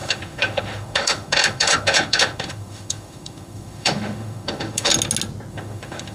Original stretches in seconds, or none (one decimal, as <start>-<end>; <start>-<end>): 4.9-5.5